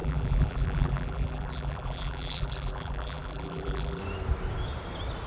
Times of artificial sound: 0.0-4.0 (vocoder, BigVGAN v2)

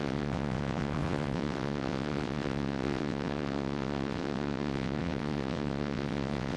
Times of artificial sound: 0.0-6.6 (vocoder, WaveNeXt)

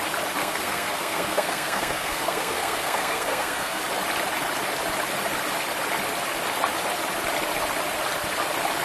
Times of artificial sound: 0.4-3.8 (codec, SNAC)

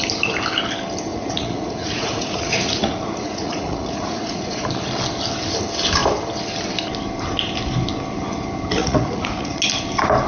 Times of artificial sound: 1.1-4.7 (vocoder, Vocos); 8.8-9.6